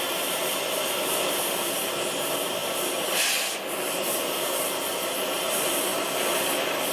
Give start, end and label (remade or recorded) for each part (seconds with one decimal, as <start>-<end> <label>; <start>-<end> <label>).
0.0-2.6 remade; 2.6-3.9 recorded; 3.9-6.9 remade